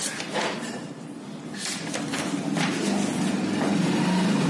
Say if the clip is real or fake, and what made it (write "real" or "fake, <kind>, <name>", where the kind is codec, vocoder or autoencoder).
real